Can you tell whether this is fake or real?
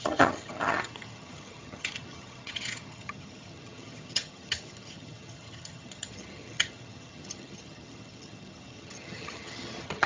fake